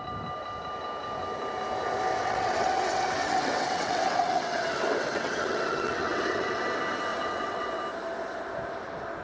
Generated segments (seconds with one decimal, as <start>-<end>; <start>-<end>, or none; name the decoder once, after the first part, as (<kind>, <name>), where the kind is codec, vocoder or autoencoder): 2.2-6.6 (vocoder, WaveNeXt); 7.1-7.8